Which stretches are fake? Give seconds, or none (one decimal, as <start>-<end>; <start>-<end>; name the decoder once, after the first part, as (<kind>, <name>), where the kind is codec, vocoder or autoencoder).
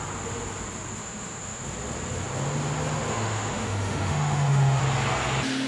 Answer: 1.0-1.6 (autoencoder, DAC-VAE); 3.1-4.8